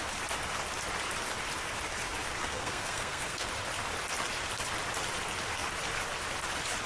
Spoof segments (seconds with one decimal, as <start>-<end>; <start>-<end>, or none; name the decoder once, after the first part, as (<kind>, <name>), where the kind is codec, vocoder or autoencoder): 2.4-3.5 (codec, SNAC)